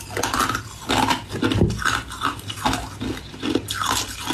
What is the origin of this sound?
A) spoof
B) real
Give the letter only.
B